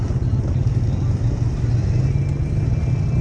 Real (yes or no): yes